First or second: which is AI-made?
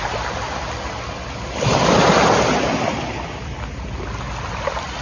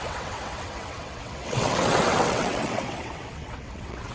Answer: second